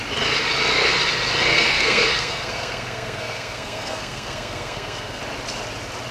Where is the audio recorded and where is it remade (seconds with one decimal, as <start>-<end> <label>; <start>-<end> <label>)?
0.0-1.5 recorded; 1.5-5.2 remade; 5.2-6.1 recorded